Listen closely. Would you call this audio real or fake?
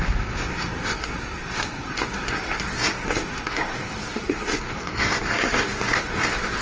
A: fake